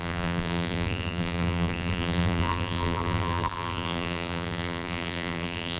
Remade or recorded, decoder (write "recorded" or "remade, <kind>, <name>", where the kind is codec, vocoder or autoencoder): remade, vocoder, BigVGAN v2